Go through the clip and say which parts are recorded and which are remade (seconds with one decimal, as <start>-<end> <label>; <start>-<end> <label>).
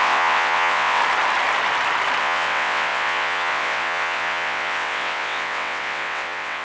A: 0.0-1.0 remade; 1.0-2.2 recorded; 2.2-6.6 remade